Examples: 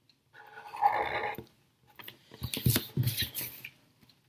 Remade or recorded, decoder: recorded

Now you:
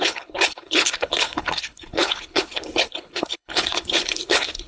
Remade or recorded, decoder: remade, codec, HILCodec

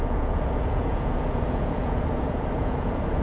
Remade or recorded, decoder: remade, vocoder, Vocos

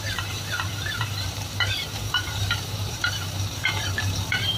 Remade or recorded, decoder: remade, vocoder, BigVGAN v2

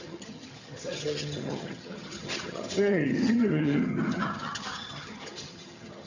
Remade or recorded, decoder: remade, vocoder, HiFi-GAN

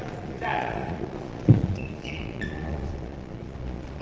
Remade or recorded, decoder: remade, vocoder, Vocos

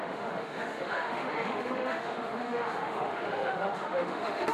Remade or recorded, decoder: remade, autoencoder, DAC-VAE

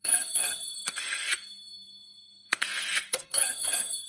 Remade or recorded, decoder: remade, codec, SNAC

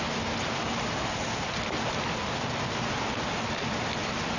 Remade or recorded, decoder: recorded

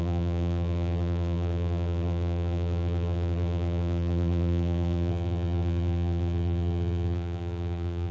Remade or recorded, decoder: remade, vocoder, BigVGAN v2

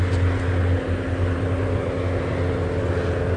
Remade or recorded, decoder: recorded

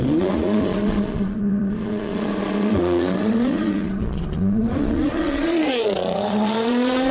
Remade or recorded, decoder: remade, vocoder, Vocos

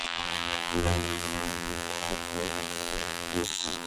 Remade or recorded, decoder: remade, vocoder, BigVGAN v2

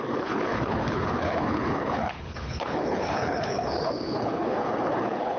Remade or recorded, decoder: remade, codec, HILCodec